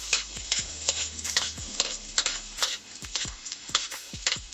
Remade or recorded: remade